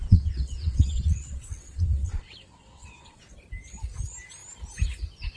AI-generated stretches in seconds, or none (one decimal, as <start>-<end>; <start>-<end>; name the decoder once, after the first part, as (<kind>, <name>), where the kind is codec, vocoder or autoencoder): 0.0-3.2 (vocoder, WaveNeXt)